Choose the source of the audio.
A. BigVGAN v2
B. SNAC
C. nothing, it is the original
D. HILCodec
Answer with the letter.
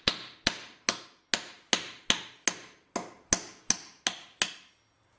C